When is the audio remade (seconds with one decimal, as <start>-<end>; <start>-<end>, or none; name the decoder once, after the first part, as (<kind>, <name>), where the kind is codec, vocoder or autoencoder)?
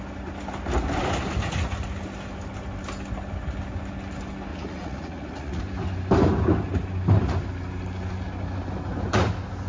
4.5-5.6 (vocoder, Vocos)